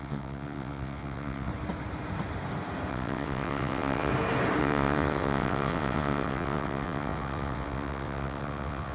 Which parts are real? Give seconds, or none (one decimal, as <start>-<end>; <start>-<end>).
1.5-2.9; 4.1-4.6